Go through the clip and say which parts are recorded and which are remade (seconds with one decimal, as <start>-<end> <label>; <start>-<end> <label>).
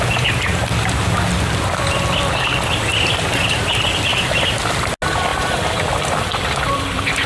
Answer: 0.0-4.1 recorded; 4.1-4.6 remade; 4.6-5.3 recorded; 5.3-5.9 remade; 5.9-7.3 recorded